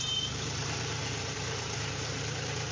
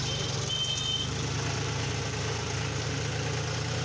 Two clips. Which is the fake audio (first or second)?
first